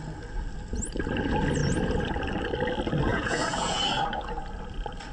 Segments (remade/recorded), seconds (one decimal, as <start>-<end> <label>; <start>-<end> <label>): 0.0-3.1 recorded; 3.1-3.8 remade; 3.8-5.1 recorded